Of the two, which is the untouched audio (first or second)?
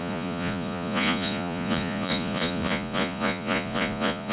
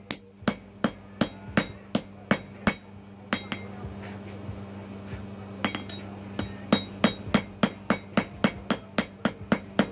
second